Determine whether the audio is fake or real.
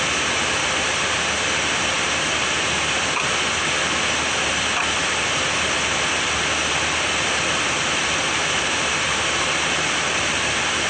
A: real